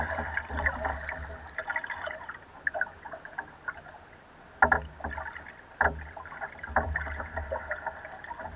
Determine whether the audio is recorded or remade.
recorded